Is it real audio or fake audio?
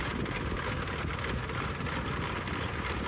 real